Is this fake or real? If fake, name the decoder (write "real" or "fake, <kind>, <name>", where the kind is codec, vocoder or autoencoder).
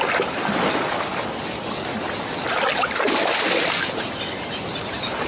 real